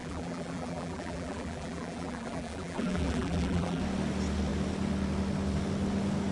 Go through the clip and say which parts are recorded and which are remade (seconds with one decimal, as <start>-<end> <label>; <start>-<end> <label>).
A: 0.0-3.8 remade; 3.8-6.3 recorded